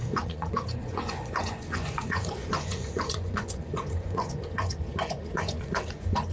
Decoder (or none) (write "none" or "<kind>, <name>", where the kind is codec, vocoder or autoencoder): vocoder, Vocos